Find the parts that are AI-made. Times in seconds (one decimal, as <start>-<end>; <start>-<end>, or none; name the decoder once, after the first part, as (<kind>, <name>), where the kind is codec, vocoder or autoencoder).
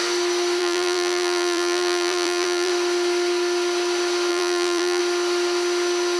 0.6-2.7 (vocoder, BigVGAN v2); 4.3-5.0